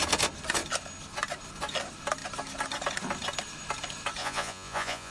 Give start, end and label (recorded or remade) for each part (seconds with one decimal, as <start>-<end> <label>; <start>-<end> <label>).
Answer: 0.0-4.2 recorded; 4.2-5.1 remade